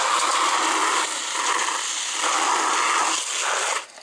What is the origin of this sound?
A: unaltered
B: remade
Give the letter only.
A